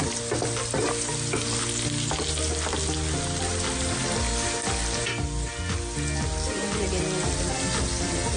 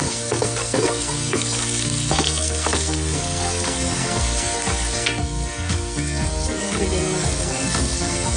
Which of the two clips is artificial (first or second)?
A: second